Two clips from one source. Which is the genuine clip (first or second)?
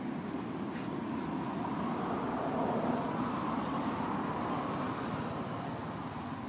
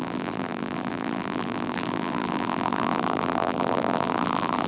first